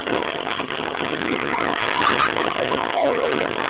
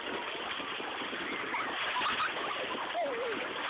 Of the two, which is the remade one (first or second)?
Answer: first